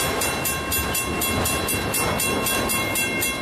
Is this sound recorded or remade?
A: recorded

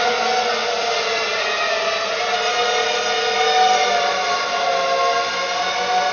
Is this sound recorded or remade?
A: recorded